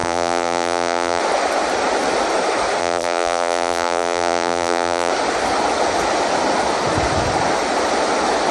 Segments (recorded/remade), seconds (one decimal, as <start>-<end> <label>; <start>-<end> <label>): 0.0-1.2 remade; 1.2-2.8 recorded; 2.8-5.1 remade; 5.1-8.5 recorded